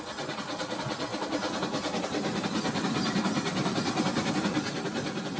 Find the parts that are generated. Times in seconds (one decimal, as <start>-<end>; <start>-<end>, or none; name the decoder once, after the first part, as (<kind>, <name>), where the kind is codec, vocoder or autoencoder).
none